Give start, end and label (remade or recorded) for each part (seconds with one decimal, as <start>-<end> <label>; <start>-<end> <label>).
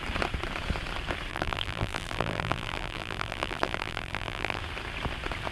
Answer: 0.0-1.3 recorded; 1.3-4.6 remade; 4.6-5.5 recorded